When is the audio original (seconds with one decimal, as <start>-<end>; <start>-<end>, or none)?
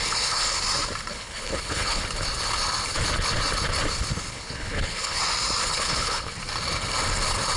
0.6-1.1; 2.0-4.3; 5.2-5.7; 6.3-7.6